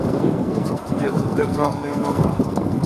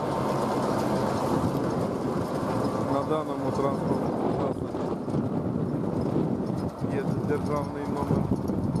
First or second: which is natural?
second